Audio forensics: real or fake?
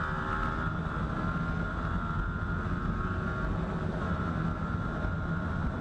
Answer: real